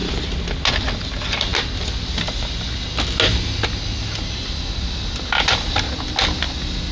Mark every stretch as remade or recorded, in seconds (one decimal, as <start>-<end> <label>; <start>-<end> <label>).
0.0-6.9 recorded